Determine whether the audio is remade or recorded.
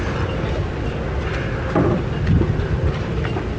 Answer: recorded